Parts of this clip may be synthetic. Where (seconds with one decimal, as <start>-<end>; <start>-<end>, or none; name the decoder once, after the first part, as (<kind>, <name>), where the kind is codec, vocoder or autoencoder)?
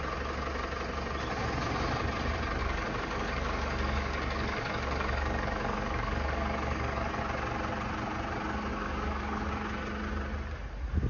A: 2.6-7.2 (codec, DAC); 8.7-9.5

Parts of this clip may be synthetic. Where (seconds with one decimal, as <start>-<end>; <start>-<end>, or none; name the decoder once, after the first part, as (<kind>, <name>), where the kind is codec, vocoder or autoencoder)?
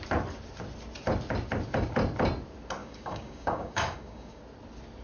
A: 2.8-4.4 (codec, DAC)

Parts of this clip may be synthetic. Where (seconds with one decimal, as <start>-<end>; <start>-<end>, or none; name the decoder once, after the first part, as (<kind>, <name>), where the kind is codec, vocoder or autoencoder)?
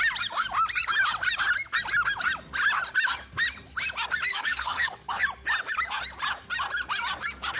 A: 4.3-5.2 (codec, DAC)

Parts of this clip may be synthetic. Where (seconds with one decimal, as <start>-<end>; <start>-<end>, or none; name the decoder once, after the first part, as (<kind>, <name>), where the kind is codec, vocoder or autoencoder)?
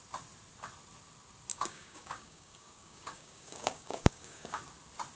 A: 1.5-4.6 (codec, DAC)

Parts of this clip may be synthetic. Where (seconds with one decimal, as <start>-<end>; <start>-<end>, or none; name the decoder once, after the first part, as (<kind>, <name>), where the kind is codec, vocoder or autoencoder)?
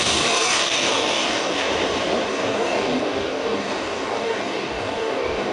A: 0.0-1.7 (codec, DAC); 2.3-5.5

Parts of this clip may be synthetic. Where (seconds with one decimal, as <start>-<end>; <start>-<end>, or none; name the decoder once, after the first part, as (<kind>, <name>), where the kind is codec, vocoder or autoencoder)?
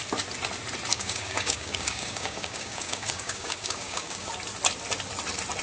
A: 0.9-4.3 (codec, DAC)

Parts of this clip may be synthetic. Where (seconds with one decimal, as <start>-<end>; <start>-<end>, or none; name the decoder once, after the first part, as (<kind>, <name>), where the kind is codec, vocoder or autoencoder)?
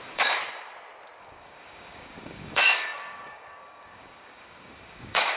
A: 0.0-0.4 (codec, DAC); 1.2-5.4